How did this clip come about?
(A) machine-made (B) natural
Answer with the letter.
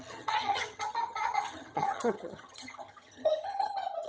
A